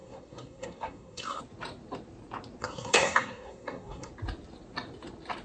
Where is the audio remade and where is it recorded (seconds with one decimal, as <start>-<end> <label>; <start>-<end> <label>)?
0.0-1.4 remade; 1.4-2.6 recorded; 2.6-4.1 remade; 4.1-5.4 recorded